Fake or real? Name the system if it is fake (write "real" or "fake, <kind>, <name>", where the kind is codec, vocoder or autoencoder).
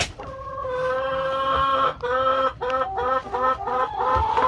real